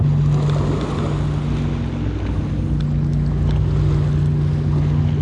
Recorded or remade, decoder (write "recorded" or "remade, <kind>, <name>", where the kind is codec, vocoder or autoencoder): recorded